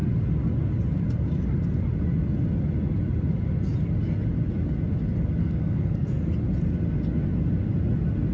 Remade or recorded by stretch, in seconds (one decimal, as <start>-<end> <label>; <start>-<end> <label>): 0.0-5.4 recorded; 5.4-6.2 remade; 6.2-8.3 recorded